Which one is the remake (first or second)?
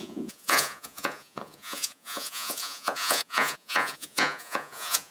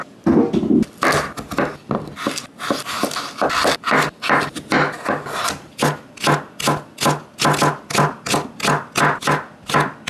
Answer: first